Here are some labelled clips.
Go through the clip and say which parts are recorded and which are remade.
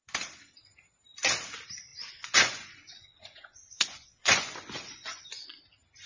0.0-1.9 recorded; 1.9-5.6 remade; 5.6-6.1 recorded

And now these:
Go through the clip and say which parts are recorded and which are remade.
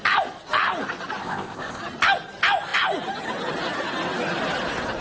0.0-1.2 recorded; 1.2-1.8 remade; 1.8-5.0 recorded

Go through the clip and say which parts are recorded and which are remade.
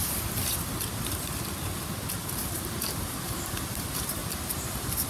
0.0-2.1 recorded; 2.1-4.2 remade; 4.2-5.1 recorded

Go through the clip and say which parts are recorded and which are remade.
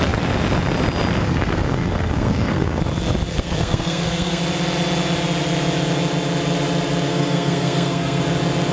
0.0-1.2 recorded; 1.2-2.8 remade; 2.8-3.3 recorded; 3.3-4.4 remade; 4.4-7.1 recorded; 7.1-8.2 remade; 8.2-8.7 recorded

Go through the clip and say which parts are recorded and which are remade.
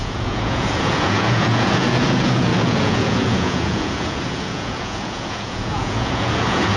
0.0-6.8 remade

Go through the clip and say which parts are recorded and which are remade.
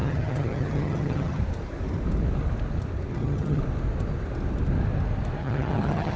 0.0-1.4 remade; 1.4-3.1 recorded; 3.1-3.6 remade; 3.6-5.4 recorded; 5.4-6.2 remade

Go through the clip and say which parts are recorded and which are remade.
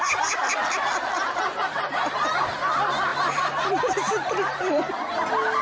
0.0-1.5 recorded; 1.5-2.3 remade; 2.3-3.1 recorded; 3.1-4.9 remade; 4.9-5.6 recorded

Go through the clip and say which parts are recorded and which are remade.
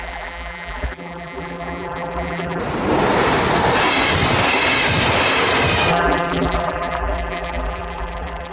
0.0-2.6 remade; 2.6-5.9 recorded; 5.9-8.5 remade